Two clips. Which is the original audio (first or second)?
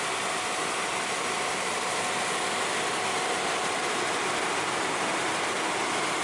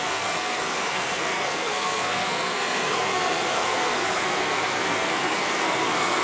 first